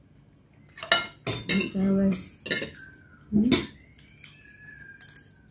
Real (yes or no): yes